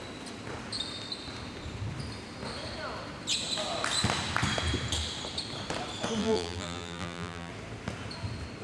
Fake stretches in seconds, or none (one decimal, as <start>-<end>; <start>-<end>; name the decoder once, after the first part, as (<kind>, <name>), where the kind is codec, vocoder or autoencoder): 6.2-7.5 (vocoder, BigVGAN v2)